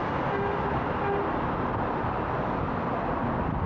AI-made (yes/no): no